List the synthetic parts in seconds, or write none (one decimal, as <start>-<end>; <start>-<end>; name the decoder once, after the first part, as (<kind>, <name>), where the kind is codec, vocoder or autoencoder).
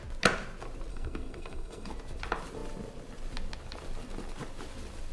0.9-1.9 (codec, SNAC)